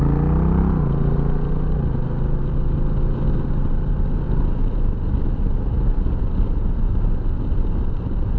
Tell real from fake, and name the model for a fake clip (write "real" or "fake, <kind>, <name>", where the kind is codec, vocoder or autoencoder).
real